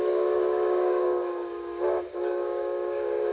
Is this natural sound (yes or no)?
no